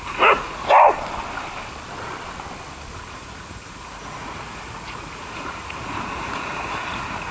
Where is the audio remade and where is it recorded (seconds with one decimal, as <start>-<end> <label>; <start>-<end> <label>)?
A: 0.0-0.6 remade; 0.6-2.9 recorded; 2.9-7.3 remade